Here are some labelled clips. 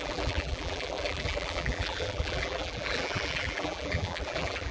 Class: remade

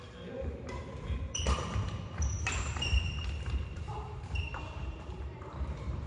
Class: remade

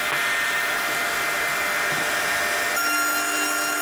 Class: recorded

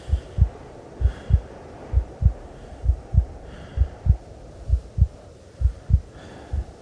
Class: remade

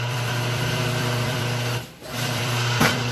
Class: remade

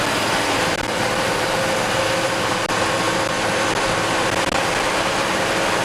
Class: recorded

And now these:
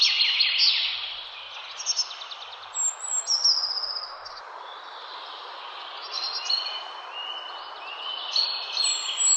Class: recorded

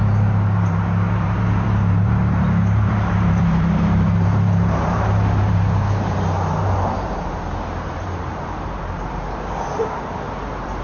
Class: remade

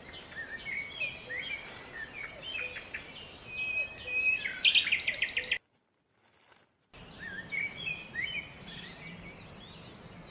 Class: recorded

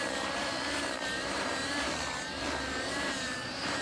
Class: remade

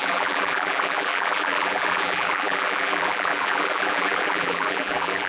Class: remade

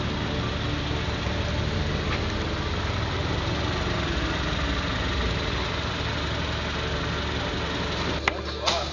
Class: recorded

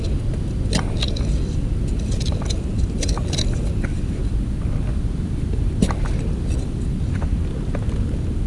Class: recorded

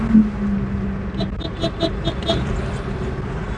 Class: recorded